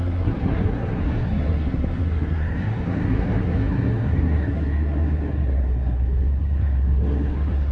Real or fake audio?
fake